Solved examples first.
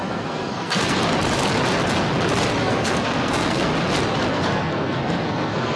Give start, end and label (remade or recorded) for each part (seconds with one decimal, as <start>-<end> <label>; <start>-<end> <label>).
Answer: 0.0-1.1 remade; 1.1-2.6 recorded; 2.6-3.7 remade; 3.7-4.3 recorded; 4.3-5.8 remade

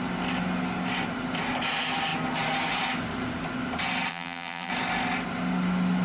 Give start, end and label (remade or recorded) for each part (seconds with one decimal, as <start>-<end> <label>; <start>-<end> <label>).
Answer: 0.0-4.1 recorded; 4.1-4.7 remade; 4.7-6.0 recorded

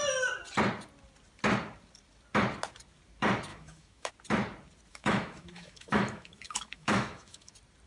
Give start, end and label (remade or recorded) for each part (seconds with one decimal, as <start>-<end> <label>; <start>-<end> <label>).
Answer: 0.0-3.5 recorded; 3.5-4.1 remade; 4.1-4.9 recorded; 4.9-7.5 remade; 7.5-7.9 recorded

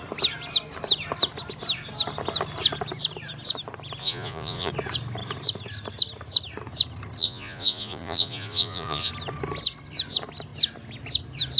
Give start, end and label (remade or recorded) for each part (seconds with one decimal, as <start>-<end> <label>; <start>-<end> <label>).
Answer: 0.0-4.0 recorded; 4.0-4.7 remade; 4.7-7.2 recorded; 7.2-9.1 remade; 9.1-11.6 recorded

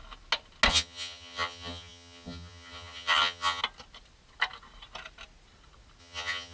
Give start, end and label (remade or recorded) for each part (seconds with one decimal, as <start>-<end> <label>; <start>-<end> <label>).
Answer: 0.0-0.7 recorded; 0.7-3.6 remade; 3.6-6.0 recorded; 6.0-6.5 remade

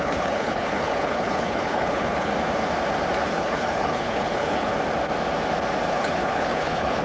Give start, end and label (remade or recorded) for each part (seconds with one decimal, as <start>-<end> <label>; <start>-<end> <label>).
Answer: 0.0-2.3 remade; 2.3-3.2 recorded; 3.2-4.7 remade; 4.7-5.9 recorded; 5.9-7.0 remade

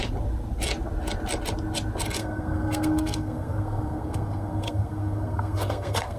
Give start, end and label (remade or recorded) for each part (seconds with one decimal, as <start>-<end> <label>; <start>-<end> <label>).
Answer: 0.0-2.2 recorded; 2.2-6.2 remade

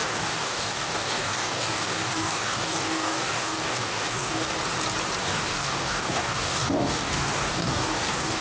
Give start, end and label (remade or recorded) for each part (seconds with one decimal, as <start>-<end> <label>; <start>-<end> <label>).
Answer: 0.0-4.5 remade; 4.5-5.2 recorded; 5.2-8.4 remade